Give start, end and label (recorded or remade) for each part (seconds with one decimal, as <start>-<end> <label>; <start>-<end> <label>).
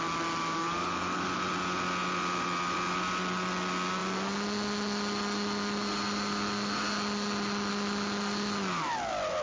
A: 0.0-0.6 recorded; 0.6-1.2 remade; 1.2-9.4 recorded